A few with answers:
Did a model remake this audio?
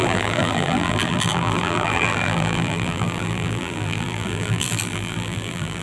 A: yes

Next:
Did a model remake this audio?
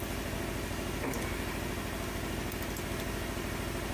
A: no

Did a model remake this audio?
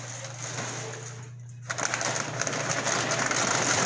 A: no